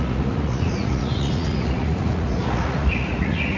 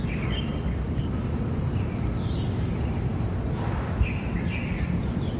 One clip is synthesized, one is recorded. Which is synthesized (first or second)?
first